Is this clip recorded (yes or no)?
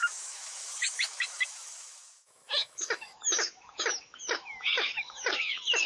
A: no